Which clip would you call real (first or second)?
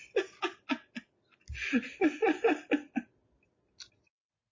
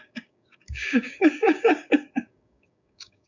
first